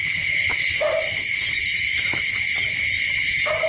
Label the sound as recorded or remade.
recorded